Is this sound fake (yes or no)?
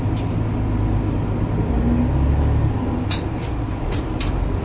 no